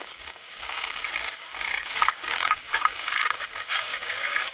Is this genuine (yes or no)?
no